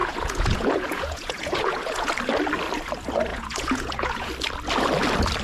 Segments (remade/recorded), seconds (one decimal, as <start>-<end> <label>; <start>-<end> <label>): 0.0-2.1 remade; 2.1-3.3 recorded; 3.3-4.3 remade; 4.3-5.4 recorded